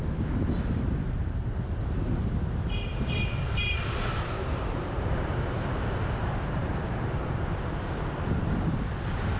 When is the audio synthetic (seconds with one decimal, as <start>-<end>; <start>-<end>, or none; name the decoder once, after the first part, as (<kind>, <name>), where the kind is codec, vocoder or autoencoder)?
0.7-9.4 (vocoder, BigVGAN v2)